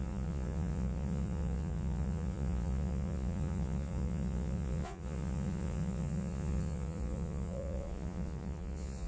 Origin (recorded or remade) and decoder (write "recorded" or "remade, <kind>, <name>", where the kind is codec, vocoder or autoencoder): remade, vocoder, Vocos